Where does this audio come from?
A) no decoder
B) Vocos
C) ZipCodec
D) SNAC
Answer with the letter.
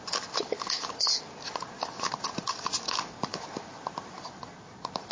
A